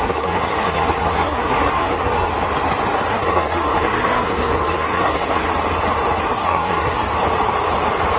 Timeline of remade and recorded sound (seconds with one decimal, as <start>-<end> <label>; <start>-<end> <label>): 0.0-2.3 remade; 2.3-3.1 recorded; 3.1-5.5 remade; 5.5-6.2 recorded; 6.2-7.1 remade; 7.1-8.2 recorded

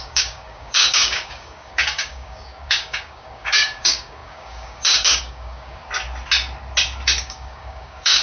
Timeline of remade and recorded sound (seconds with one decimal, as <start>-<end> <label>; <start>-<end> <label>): 0.0-5.8 remade; 5.8-7.2 recorded; 7.2-8.2 remade

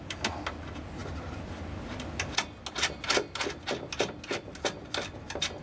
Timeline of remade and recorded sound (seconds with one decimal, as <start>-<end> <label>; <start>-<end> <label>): 0.0-5.6 recorded

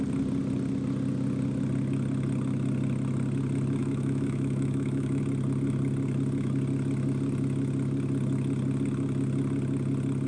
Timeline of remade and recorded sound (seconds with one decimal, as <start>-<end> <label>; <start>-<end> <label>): 0.0-3.8 recorded; 3.8-5.2 remade; 5.2-10.3 recorded

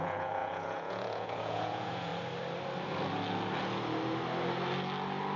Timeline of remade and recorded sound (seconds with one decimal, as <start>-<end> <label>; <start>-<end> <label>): 0.0-2.1 remade; 2.1-5.4 recorded

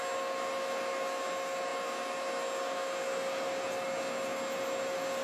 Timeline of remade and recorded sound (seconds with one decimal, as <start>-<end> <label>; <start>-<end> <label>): 0.0-5.2 recorded

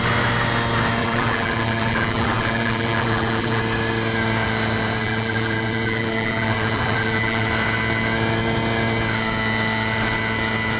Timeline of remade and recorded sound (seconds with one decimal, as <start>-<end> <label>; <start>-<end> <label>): 0.0-1.0 recorded; 1.0-3.6 remade; 3.6-5.0 recorded; 5.0-7.5 remade; 7.5-10.8 recorded

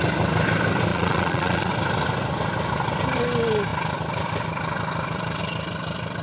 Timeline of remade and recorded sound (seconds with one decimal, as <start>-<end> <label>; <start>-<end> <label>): 0.0-0.9 recorded; 0.9-1.7 remade; 1.7-6.2 recorded